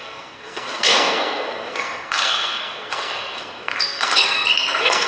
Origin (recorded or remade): remade